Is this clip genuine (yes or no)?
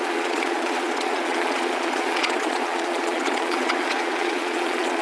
no